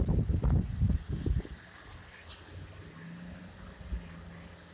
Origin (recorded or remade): recorded